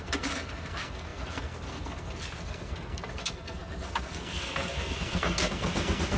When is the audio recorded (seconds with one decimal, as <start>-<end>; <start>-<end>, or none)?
none